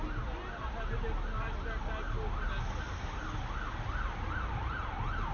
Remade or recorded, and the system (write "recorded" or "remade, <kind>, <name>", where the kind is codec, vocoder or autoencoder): recorded